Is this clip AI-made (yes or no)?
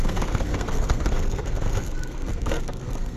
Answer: yes